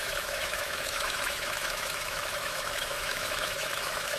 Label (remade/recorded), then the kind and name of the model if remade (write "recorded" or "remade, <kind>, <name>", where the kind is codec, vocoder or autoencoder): remade, autoencoder, DAC-VAE